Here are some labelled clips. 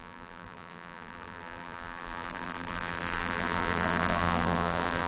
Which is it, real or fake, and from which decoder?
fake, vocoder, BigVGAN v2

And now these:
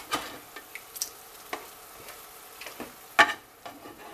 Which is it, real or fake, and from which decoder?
real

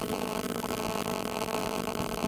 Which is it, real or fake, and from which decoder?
fake, vocoder, BigVGAN v2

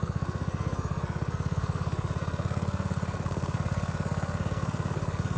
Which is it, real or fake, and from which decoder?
fake, codec, SNAC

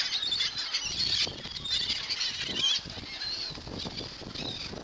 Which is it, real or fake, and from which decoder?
real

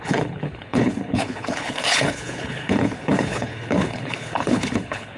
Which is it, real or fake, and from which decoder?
fake, codec, HILCodec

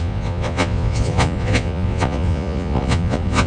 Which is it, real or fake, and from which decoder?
fake, vocoder, Vocos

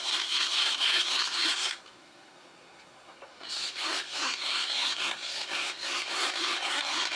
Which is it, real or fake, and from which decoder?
fake, codec, SNAC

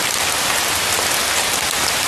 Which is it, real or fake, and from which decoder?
real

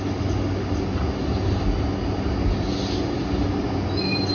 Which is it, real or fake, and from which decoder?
real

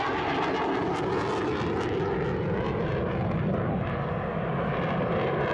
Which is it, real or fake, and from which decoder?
real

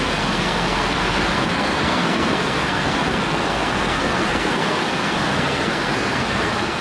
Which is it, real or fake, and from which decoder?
fake, codec, SNAC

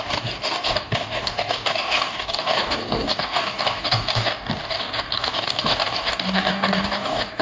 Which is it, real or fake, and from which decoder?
fake, codec, DAC